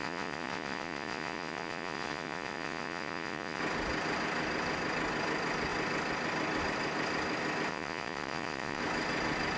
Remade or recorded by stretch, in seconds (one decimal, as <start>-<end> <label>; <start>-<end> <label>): 0.0-3.6 remade; 3.6-7.7 recorded; 7.7-8.8 remade; 8.8-9.6 recorded

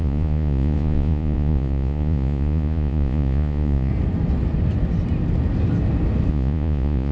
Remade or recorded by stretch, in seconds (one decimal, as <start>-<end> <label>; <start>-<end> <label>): 0.0-3.9 remade; 3.9-6.3 recorded; 6.3-7.1 remade

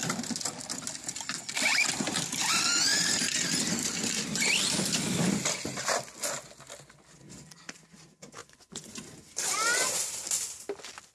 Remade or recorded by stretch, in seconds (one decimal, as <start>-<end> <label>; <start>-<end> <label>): 0.0-8.4 recorded; 8.4-9.0 remade; 9.0-11.1 recorded